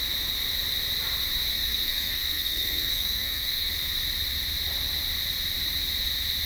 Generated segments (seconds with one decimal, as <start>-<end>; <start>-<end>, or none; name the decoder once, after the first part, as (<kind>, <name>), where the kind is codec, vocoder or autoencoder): 1.5-3.7 (codec, SNAC)